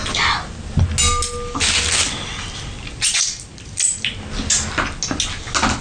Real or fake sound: real